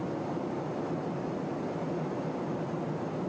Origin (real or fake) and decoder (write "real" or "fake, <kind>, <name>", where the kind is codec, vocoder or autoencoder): real